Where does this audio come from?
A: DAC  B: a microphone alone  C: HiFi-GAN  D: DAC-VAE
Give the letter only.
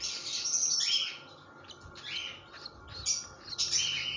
B